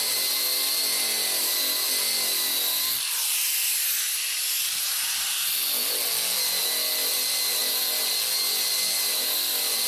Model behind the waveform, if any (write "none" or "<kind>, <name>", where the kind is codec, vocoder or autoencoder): none